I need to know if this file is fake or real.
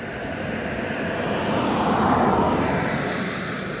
real